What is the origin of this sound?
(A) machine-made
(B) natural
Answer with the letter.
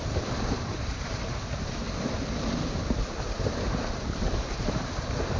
A